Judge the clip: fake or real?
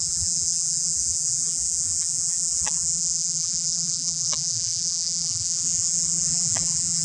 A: fake